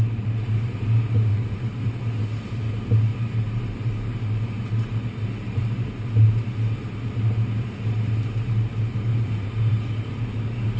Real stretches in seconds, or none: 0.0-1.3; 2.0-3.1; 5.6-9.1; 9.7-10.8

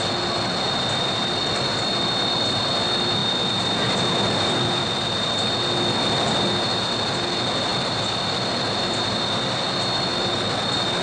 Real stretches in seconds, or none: 0.0-11.0

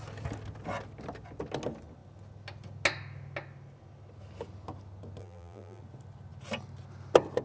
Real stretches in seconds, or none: 0.0-5.2; 5.8-7.4

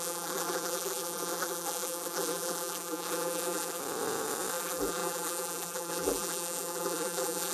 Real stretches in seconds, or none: 3.8-4.5

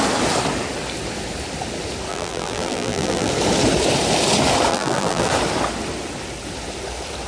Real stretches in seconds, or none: 0.0-2.1; 3.3-4.7; 5.3-7.3

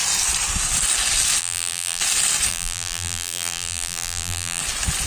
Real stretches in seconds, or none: 0.0-1.4; 2.0-2.5; 4.6-5.1

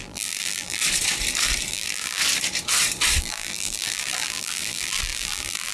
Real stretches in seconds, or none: 0.8-1.7; 2.2-3.2

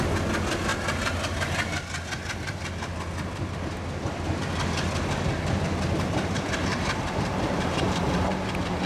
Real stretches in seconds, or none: 0.0-6.7; 8.5-8.9